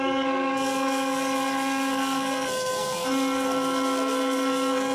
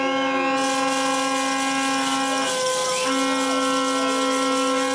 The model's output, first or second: first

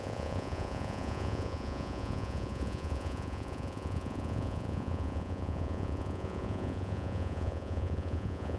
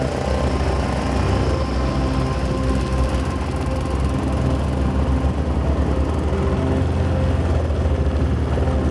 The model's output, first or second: first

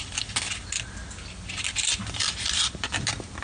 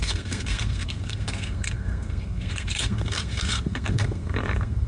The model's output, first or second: second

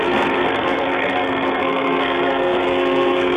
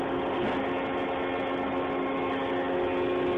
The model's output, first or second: first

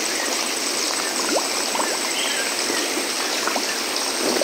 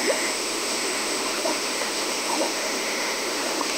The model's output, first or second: second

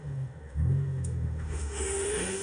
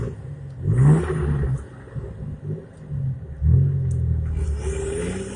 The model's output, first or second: first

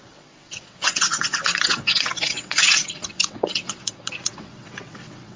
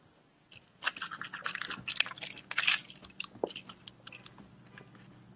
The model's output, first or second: first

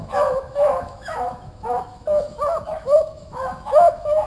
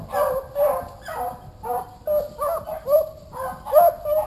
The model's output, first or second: first